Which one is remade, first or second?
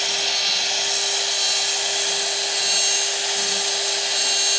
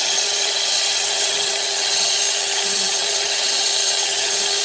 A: second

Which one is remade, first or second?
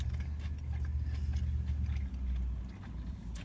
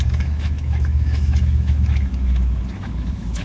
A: second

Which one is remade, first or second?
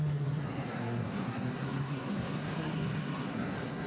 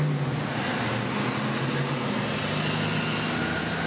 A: first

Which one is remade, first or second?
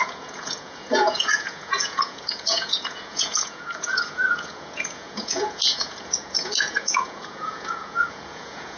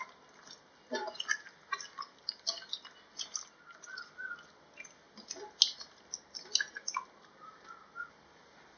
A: first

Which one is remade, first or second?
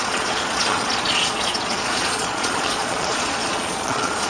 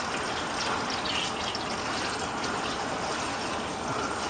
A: first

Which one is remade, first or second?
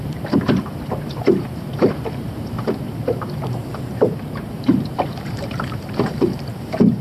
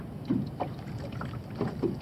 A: first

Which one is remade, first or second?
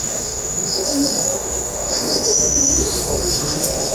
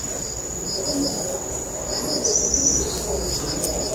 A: first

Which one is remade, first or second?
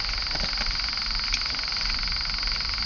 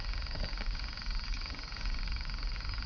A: second